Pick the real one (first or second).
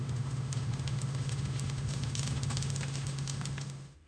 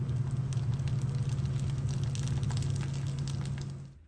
second